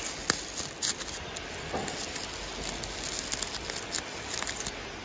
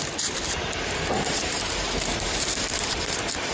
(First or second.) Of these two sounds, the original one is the first